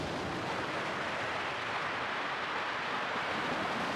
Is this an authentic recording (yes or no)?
yes